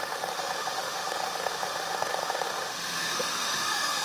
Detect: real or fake fake